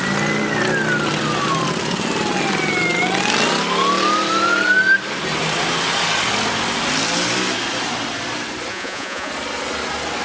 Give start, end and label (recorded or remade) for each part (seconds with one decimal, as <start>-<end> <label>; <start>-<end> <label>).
0.0-8.7 recorded; 8.7-9.3 remade; 9.3-10.2 recorded